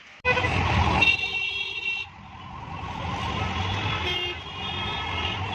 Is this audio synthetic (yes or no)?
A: no